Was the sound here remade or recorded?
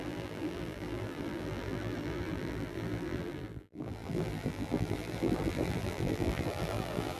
remade